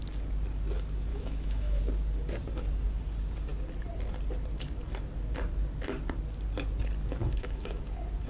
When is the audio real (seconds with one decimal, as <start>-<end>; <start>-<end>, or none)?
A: 0.0-1.1; 1.8-7.2; 7.8-8.3